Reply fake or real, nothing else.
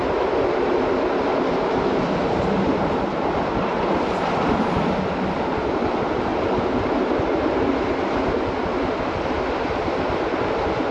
real